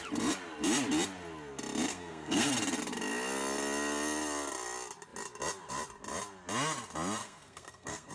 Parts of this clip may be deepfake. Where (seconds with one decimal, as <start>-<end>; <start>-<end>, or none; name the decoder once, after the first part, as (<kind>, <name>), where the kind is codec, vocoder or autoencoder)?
1.9-2.5 (codec, SNAC); 7.2-8.1

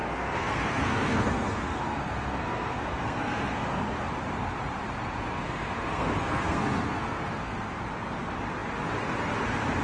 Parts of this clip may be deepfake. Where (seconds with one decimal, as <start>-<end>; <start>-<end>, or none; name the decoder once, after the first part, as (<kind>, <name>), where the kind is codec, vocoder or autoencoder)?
0.0-3.8 (codec, SNAC); 5.3-7.8